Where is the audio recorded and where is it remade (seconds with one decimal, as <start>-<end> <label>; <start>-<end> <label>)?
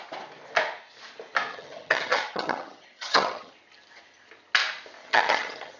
0.0-1.5 recorded; 1.5-3.5 remade; 3.5-5.0 recorded; 5.0-5.8 remade